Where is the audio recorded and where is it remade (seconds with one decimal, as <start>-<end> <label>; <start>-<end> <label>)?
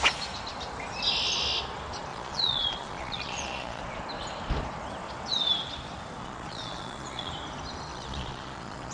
0.0-2.1 recorded; 2.1-3.8 remade; 3.8-6.2 recorded; 6.2-7.3 remade; 7.3-7.9 recorded; 7.9-8.9 remade